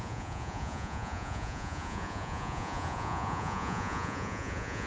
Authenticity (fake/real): fake